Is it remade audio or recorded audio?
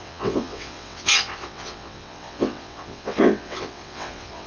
remade